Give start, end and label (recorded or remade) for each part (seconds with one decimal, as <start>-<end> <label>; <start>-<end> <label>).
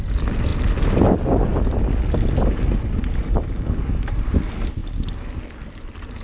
0.0-6.2 recorded